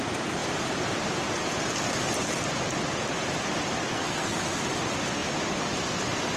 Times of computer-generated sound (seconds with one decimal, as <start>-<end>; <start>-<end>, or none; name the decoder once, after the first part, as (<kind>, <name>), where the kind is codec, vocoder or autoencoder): 3.9-4.4 (codec, SNAC)